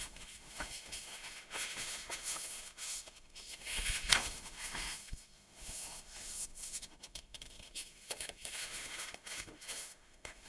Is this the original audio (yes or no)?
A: no